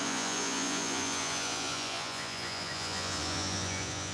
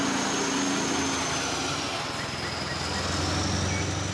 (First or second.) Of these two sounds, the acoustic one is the second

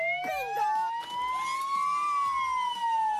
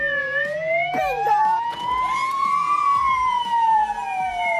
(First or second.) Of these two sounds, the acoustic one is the first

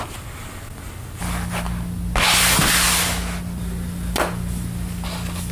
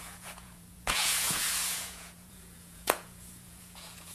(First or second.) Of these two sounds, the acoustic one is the first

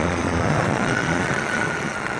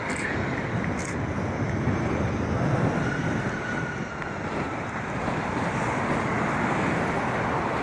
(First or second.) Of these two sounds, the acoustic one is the second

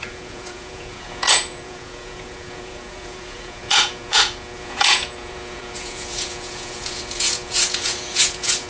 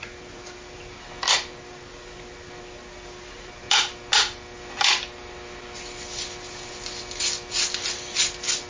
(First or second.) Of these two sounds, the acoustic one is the second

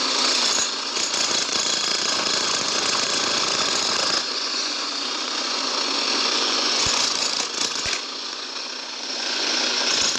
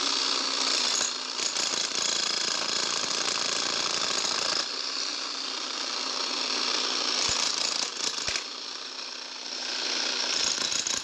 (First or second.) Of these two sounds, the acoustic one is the second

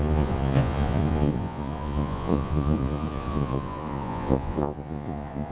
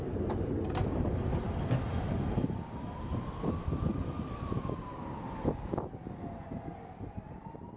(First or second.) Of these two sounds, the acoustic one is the second